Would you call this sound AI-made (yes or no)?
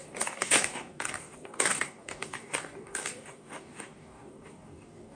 yes